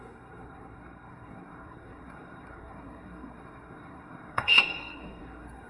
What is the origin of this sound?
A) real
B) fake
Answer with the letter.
B